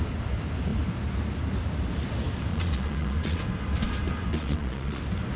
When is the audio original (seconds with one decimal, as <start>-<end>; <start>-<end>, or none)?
0.0-2.5; 3.4-4.3; 5.0-5.4